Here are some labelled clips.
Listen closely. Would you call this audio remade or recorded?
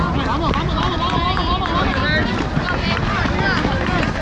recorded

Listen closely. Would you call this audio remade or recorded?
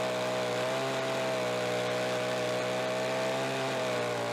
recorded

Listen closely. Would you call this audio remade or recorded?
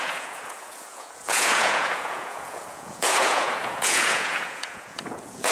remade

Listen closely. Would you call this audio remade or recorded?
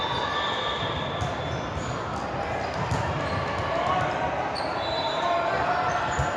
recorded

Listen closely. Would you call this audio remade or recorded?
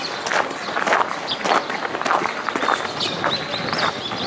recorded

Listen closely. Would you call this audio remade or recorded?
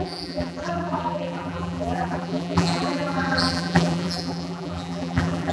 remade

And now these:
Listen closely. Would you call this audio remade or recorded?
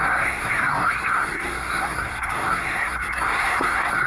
remade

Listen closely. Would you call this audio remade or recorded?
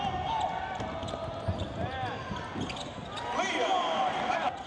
recorded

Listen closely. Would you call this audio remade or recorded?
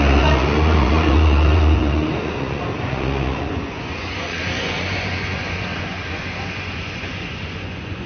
remade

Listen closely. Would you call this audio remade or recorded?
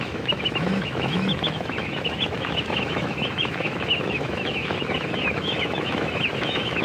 remade